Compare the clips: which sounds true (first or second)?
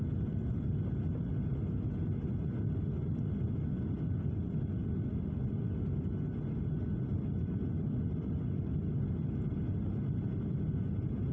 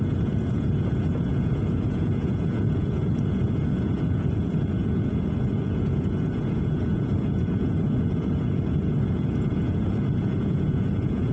first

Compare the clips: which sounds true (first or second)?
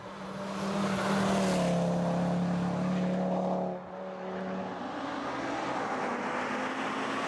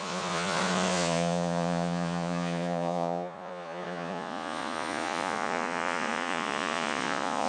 first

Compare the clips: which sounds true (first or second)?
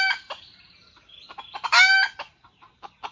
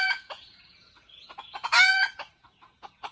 first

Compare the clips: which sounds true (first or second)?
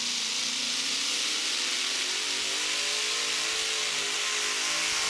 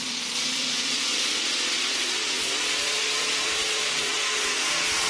first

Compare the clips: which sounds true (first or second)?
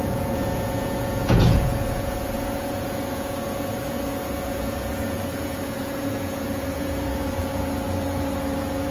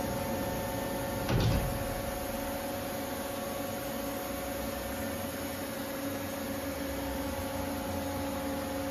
second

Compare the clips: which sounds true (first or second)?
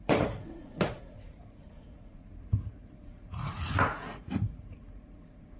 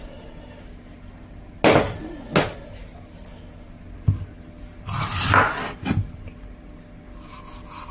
second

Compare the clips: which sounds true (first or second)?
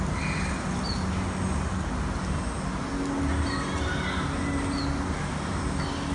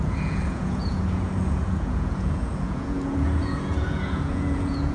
first